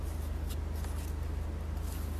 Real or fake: real